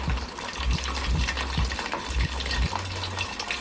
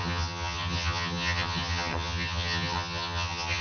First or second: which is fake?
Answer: second